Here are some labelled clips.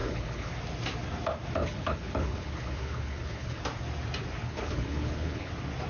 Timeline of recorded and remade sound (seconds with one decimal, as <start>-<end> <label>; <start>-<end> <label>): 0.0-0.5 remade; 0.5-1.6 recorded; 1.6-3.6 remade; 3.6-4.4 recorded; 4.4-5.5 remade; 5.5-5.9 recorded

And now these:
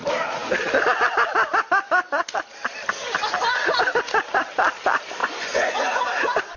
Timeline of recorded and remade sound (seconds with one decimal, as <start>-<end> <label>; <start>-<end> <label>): 0.0-5.2 recorded; 5.2-6.0 remade; 6.0-6.6 recorded

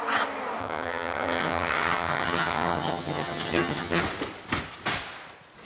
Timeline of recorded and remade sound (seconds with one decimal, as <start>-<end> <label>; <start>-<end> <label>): 0.0-0.6 recorded; 0.6-4.0 remade; 4.0-5.7 recorded